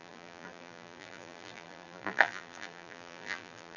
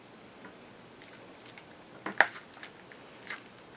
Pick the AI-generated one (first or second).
first